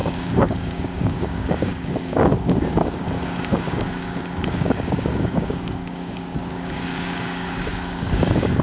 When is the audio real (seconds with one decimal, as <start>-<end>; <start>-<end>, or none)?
none